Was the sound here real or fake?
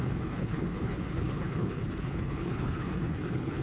fake